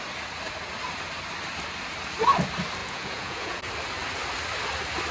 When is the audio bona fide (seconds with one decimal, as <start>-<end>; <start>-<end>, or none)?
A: 0.0-2.8; 3.6-5.1